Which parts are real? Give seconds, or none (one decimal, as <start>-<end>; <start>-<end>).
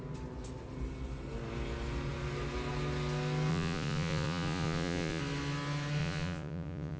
0.0-3.5; 5.2-6.0